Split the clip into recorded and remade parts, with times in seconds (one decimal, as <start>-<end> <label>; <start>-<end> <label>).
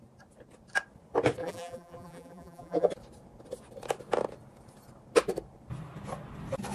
0.0-1.4 recorded; 1.4-2.9 remade; 2.9-6.7 recorded